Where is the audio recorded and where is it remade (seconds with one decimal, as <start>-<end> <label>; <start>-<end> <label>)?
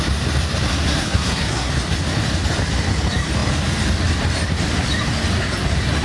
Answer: 0.0-0.7 recorded; 0.7-1.7 remade; 1.7-6.0 recorded